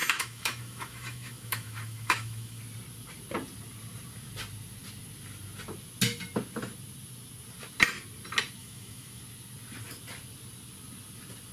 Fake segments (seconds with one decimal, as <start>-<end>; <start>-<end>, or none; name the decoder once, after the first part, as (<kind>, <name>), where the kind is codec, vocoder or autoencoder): 0.0-2.6 (autoencoder, DAC-VAE); 8.6-9.2